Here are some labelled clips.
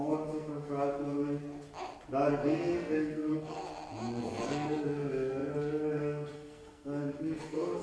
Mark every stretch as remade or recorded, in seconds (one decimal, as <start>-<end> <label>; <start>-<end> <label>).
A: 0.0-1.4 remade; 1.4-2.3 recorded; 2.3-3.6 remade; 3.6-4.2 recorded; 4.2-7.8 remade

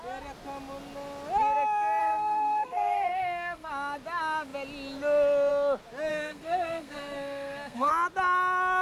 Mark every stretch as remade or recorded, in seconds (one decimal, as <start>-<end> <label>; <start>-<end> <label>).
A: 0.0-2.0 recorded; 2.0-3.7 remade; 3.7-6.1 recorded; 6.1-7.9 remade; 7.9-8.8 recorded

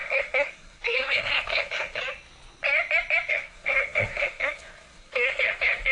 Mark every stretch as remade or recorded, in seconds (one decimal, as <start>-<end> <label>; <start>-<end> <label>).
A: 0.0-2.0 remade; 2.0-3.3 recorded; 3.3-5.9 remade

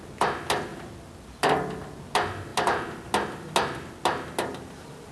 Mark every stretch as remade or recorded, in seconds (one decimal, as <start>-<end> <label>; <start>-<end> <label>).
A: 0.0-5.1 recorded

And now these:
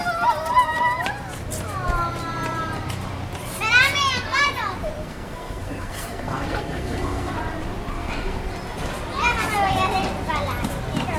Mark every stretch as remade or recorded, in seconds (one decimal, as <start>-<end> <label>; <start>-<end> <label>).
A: 0.0-5.0 recorded; 5.0-7.3 remade; 7.3-8.0 recorded; 8.0-8.5 remade; 8.5-11.2 recorded